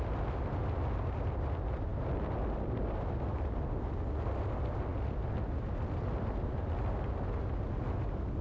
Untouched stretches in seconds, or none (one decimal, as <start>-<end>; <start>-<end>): 0.0-8.4